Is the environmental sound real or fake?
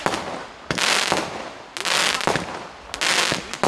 real